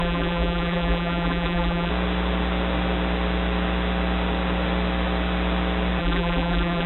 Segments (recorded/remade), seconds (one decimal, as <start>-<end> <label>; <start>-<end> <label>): 0.0-1.9 remade; 1.9-6.0 recorded; 6.0-6.9 remade